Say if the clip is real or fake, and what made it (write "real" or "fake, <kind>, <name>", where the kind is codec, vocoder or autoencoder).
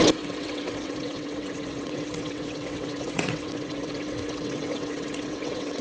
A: fake, vocoder, WaveNeXt